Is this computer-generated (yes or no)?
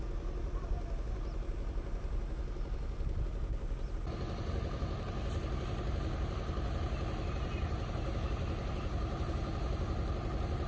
no